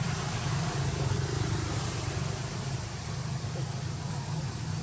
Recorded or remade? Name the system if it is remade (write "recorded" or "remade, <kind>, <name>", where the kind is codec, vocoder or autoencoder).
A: remade, vocoder, BigVGAN v2